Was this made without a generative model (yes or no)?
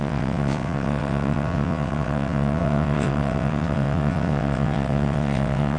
no